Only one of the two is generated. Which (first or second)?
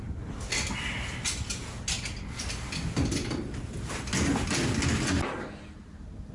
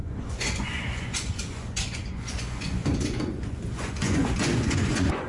second